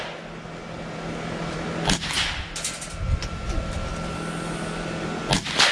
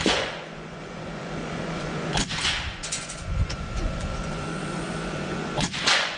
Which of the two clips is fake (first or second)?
second